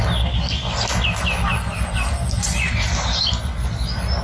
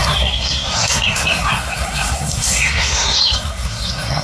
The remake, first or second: second